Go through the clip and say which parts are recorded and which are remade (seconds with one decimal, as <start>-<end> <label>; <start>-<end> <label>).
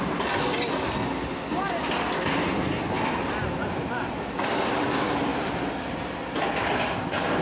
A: 0.0-7.4 recorded